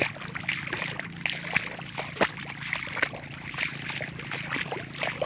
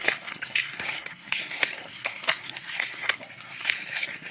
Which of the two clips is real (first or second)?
first